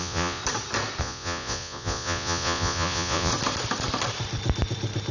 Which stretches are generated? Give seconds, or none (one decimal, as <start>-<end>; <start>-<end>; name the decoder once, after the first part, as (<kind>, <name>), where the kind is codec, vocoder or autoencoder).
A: 0.0-0.4 (vocoder, Vocos); 1.0-3.3